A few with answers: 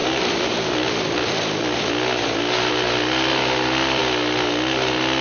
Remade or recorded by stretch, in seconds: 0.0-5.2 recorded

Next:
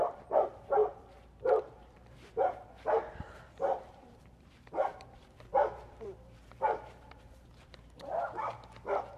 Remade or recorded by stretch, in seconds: 0.0-8.1 remade; 8.1-9.2 recorded